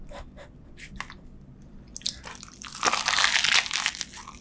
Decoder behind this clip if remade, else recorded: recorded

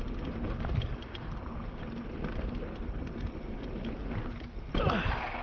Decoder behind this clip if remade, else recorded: recorded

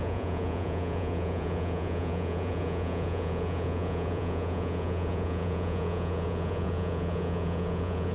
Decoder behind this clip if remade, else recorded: remade, vocoder, Vocos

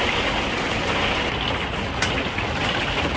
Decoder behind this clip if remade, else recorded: recorded